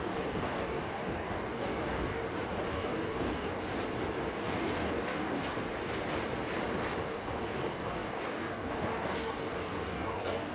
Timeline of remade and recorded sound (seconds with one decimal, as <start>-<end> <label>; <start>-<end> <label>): 0.0-2.2 remade; 2.2-2.7 recorded; 2.7-3.6 remade; 3.6-4.4 recorded; 4.4-5.5 remade; 5.5-7.0 recorded; 7.0-10.5 remade